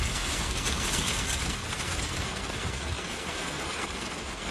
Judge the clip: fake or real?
fake